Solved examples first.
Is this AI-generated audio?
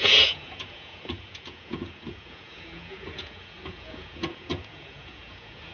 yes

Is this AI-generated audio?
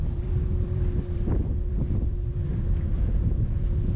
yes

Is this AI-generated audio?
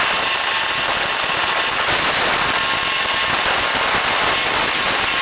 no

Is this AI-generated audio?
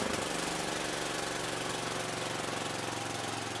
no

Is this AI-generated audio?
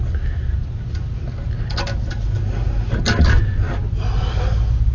no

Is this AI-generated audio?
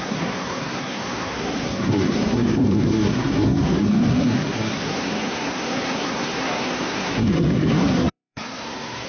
yes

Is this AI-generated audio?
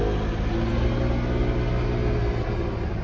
no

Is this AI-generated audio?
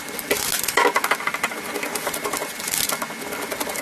no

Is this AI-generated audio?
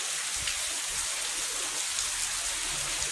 no